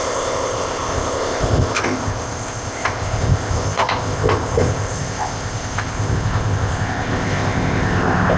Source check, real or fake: fake